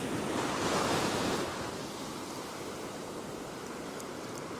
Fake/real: fake